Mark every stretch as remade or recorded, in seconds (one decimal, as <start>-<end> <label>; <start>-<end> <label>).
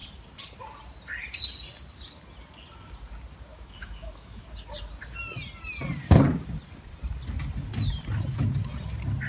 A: 0.0-3.5 recorded; 3.5-4.4 remade; 4.4-9.3 recorded